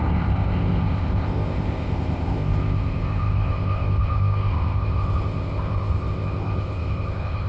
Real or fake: fake